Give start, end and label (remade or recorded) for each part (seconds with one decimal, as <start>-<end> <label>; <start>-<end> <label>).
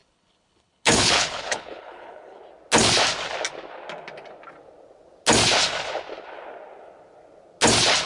0.0-2.4 remade; 2.4-8.1 recorded